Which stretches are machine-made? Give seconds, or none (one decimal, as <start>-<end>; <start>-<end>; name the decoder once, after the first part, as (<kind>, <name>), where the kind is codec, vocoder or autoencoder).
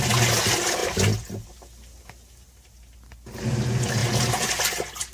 none